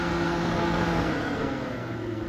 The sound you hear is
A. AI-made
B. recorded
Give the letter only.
A